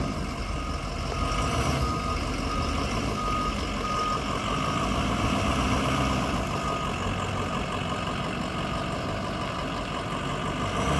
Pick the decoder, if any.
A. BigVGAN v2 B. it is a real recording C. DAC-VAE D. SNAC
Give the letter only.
B